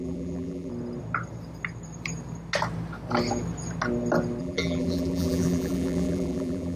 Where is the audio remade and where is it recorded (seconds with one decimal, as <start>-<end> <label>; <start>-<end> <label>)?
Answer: 0.0-0.7 remade; 0.7-4.4 recorded; 4.4-6.8 remade

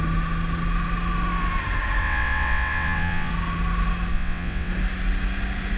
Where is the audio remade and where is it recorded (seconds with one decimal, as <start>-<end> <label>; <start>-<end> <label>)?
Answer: 0.0-2.0 recorded; 2.0-3.3 remade; 3.3-4.1 recorded; 4.1-4.7 remade; 4.7-5.8 recorded